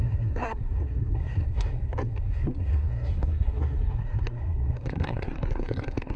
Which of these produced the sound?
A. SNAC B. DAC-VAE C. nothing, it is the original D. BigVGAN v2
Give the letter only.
A